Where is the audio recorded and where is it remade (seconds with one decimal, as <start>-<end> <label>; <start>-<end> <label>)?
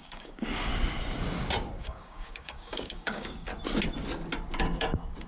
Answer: 0.0-0.7 remade; 0.7-1.8 recorded; 1.8-3.5 remade; 3.5-4.6 recorded; 4.6-5.3 remade